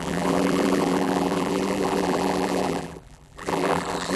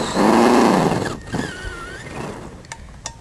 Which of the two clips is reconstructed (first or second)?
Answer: first